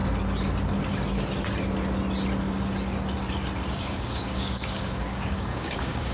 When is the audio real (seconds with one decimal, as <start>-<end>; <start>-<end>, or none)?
0.0-3.7